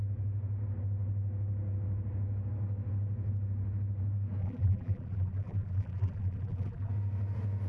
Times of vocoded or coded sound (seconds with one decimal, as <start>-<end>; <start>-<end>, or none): 4.4-6.9